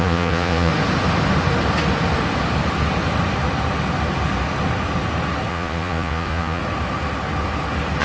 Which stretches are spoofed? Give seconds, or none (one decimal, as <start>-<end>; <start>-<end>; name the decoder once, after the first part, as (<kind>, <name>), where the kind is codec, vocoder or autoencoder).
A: 0.0-0.7 (vocoder, Vocos); 5.5-6.6